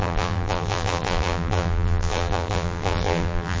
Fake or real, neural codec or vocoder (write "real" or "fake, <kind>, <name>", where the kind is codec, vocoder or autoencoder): fake, vocoder, BigVGAN v2